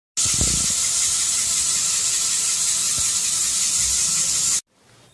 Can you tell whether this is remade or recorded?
recorded